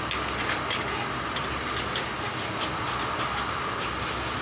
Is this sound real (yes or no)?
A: yes